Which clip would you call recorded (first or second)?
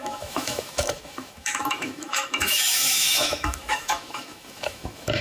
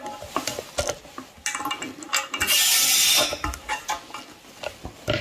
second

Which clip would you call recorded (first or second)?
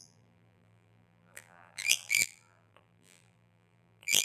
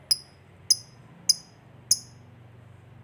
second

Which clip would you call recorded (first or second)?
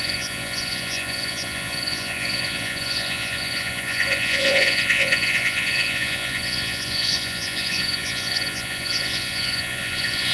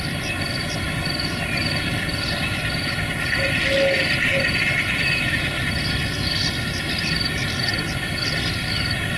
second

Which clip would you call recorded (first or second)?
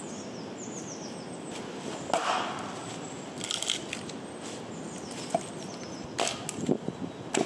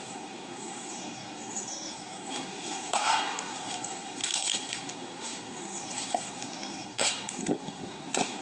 first